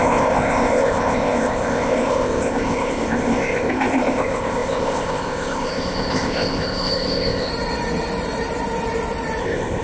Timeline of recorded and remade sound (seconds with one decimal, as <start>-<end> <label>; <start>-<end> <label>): 0.0-7.5 remade; 7.5-9.4 recorded; 9.4-9.8 remade